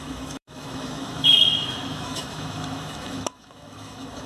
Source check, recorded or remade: remade